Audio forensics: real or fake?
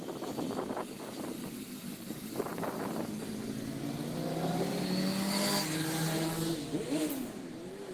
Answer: real